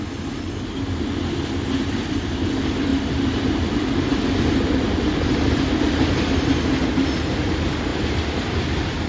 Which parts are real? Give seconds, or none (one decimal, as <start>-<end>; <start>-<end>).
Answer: 0.0-9.1